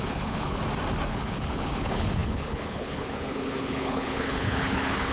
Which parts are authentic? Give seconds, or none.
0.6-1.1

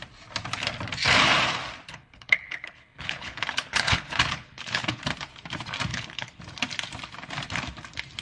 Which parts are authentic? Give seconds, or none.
0.0-1.9; 5.0-5.9; 6.4-8.2

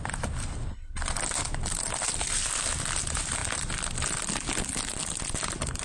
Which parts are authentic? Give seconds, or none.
0.0-5.8

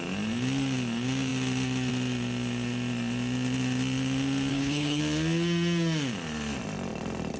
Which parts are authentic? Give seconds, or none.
0.0-4.5; 5.0-7.4

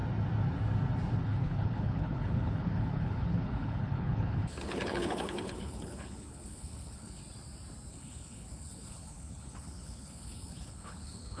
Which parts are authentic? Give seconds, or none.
0.0-1.2; 7.2-7.9

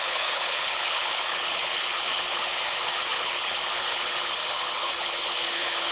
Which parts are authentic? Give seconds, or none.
none